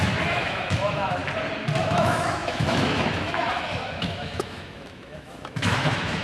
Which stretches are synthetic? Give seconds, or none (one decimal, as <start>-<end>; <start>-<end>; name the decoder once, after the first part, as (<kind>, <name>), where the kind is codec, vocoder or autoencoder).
0.0-1.2 (autoencoder, DAC-VAE); 1.8-6.2